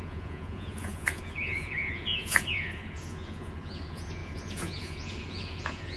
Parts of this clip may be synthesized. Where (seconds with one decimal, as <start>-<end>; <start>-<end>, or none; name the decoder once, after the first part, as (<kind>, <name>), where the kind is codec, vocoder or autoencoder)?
0.0-6.0 (vocoder, Vocos)